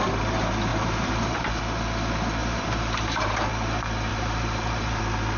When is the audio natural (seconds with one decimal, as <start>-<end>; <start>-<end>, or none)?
0.0-0.7; 1.6-2.4; 3.5-4.1; 5.0-5.4